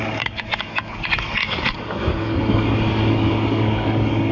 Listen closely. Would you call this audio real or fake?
fake